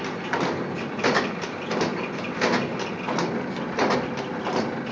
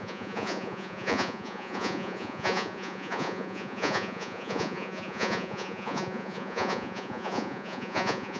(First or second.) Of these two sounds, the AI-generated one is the second